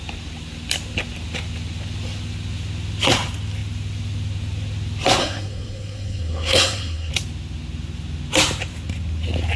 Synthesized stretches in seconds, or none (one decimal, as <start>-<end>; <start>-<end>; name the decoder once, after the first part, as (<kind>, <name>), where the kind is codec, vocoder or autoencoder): 5.2-7.1 (codec, SNAC)